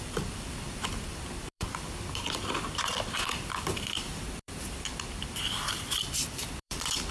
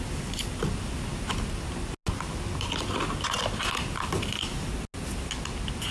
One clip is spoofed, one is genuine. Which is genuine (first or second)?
second